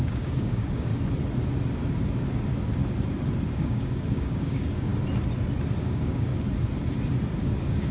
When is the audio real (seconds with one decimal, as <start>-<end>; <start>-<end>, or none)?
0.9-3.5; 4.9-5.8; 6.3-7.4